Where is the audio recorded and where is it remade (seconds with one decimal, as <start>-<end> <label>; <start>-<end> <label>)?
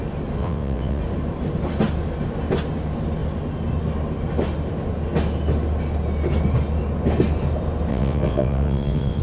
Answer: 0.0-0.4 recorded; 0.4-1.0 remade; 1.0-7.9 recorded; 7.9-9.2 remade